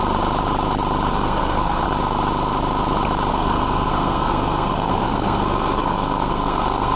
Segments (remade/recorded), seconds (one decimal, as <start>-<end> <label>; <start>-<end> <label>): 0.0-1.1 recorded; 1.1-1.8 remade; 1.8-3.3 recorded; 3.3-7.0 remade